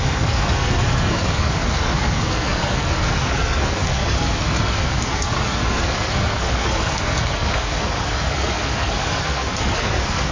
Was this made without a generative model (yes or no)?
no